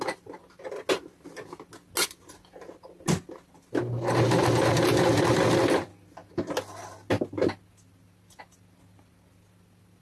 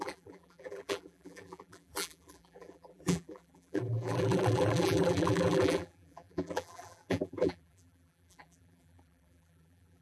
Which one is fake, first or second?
second